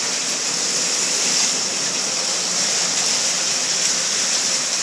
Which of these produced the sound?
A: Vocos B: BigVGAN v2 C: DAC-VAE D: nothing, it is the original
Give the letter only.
D